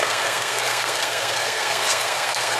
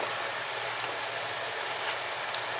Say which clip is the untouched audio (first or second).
second